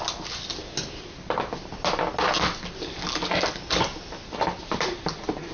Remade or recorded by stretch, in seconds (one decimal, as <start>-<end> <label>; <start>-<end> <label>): 0.0-5.5 recorded